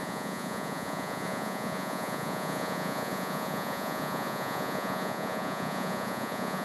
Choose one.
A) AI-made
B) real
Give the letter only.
A